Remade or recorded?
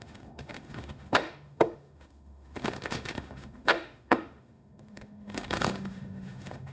remade